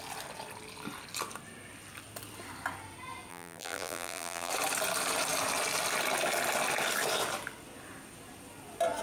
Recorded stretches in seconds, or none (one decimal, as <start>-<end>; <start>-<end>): 0.0-3.3; 4.5-9.0